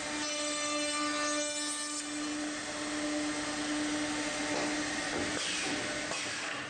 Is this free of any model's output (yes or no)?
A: yes